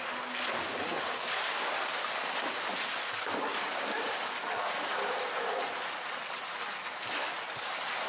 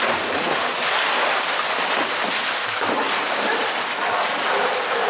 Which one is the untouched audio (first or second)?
first